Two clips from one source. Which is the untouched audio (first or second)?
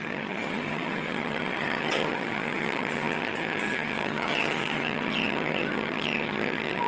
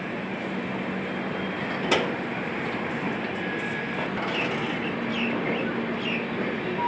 second